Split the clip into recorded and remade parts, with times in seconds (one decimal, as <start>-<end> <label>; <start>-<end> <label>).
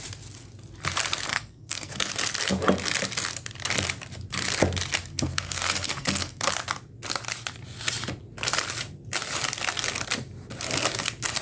0.0-1.3 recorded; 1.3-2.1 remade; 2.1-5.0 recorded; 5.0-6.5 remade; 6.5-11.4 recorded